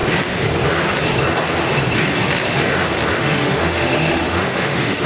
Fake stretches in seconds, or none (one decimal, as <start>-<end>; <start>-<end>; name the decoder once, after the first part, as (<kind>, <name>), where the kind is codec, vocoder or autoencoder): 3.1-5.1 (autoencoder, DAC-VAE)